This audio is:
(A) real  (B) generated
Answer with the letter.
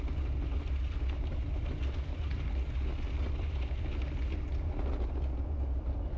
A